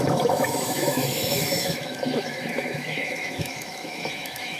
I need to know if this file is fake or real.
fake